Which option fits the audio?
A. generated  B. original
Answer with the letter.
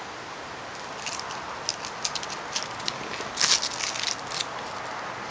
B